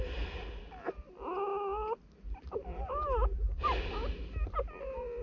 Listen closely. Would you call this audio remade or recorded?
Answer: recorded